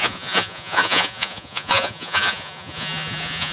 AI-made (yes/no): yes